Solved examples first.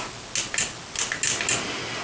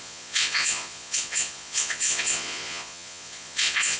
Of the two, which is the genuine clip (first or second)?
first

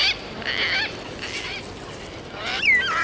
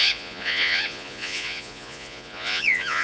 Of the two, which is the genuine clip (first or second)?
first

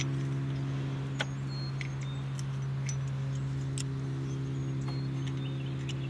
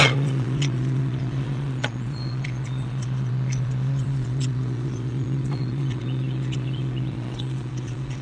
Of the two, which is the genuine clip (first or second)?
first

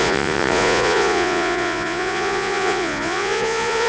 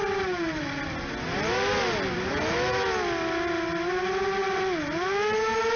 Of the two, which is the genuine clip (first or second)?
second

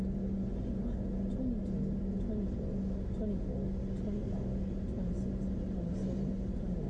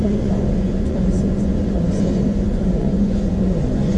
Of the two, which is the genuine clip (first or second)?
first